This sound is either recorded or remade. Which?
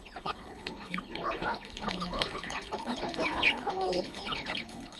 remade